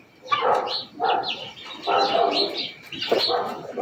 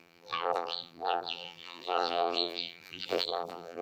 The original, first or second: first